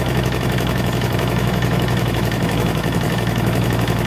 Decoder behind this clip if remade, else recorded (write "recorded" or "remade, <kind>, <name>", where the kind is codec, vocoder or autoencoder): remade, autoencoder, DAC-VAE